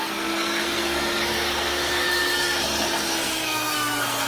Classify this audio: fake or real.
fake